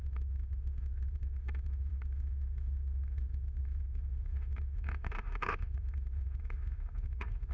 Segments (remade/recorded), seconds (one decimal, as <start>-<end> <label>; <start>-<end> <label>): 0.0-7.5 remade